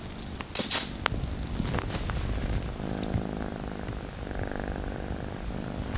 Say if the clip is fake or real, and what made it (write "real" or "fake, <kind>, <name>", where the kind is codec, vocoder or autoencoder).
real